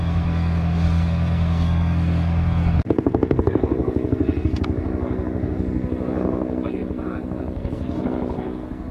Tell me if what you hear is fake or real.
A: fake